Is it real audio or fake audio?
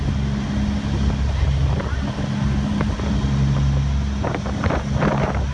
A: real